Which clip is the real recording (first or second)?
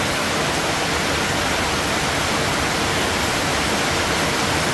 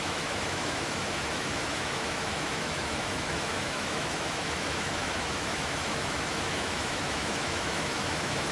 first